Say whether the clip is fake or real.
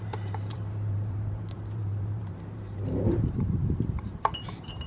fake